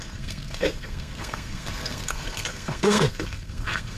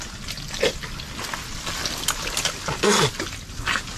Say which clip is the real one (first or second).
second